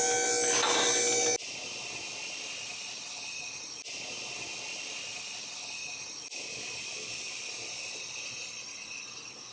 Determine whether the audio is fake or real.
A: real